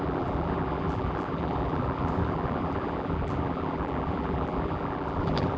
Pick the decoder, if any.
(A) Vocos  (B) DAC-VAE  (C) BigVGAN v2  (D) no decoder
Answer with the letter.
C